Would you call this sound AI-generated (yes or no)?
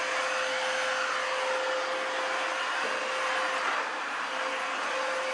no